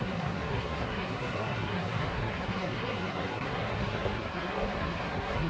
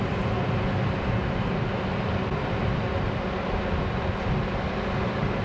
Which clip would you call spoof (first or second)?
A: first